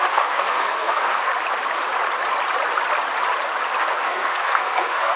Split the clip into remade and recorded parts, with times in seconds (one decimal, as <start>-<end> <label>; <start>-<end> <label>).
0.0-1.3 remade; 1.3-3.8 recorded; 3.8-5.2 remade